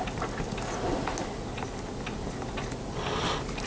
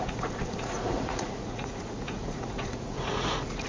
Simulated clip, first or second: second